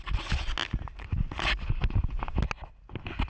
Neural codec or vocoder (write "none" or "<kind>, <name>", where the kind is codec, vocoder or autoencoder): none